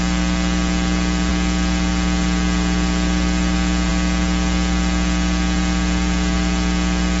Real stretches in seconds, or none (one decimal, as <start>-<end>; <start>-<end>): 0.0-7.2